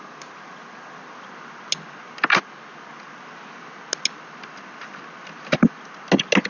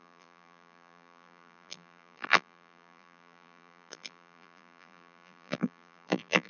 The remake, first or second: second